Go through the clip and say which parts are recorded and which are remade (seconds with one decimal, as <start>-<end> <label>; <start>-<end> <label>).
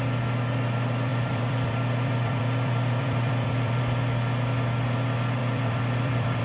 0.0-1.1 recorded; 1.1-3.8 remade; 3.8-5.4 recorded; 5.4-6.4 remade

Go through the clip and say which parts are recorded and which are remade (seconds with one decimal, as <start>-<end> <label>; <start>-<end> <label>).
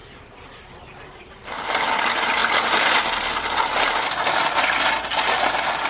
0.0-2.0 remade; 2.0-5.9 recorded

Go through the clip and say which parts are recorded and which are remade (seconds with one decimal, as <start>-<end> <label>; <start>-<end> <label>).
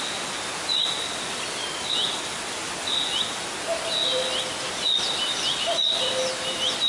0.0-4.0 recorded; 4.0-6.9 remade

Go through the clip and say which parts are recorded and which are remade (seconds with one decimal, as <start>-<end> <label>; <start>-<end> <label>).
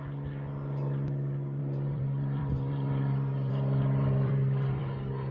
0.0-1.6 recorded; 1.6-4.8 remade; 4.8-5.3 recorded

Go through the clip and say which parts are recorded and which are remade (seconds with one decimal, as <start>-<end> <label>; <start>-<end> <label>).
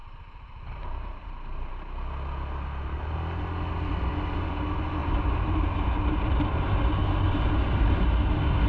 0.0-1.7 remade; 1.7-5.0 recorded; 5.0-8.1 remade; 8.1-8.7 recorded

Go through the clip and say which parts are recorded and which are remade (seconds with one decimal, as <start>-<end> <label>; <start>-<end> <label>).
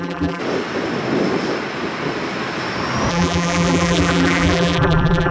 0.0-0.4 remade; 0.4-3.1 recorded; 3.1-5.3 remade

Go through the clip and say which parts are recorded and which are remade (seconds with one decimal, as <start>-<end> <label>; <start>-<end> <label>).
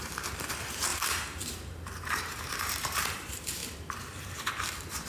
0.0-5.1 remade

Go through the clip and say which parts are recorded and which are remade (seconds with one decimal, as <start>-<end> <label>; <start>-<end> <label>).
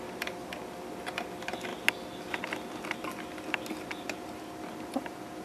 0.0-5.4 recorded